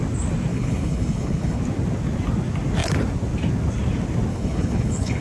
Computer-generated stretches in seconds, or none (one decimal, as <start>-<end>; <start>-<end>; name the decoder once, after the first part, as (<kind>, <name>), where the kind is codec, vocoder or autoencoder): 0.5-1.6 (codec, HILCodec); 4.3-5.2

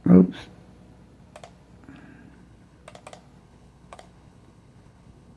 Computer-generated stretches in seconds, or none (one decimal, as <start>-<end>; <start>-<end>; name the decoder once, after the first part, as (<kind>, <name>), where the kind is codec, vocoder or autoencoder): 2.3-2.8 (codec, HILCodec); 3.4-5.4

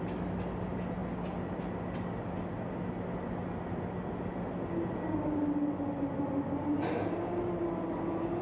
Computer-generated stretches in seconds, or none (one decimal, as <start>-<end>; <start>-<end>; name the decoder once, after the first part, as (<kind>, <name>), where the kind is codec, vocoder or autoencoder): none